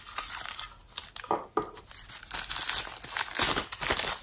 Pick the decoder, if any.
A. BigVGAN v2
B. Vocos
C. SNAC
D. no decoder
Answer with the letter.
D